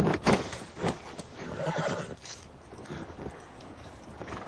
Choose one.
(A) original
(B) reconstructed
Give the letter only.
B